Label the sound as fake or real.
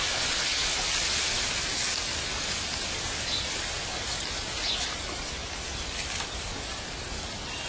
real